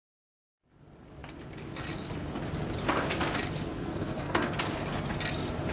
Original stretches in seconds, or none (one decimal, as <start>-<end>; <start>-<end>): 0.0-3.7; 4.6-5.7